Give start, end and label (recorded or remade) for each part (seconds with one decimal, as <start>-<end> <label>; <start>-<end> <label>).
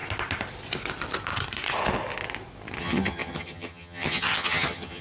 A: 0.0-2.8 recorded; 2.8-5.0 remade